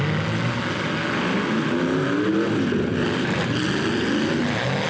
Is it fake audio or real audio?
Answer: real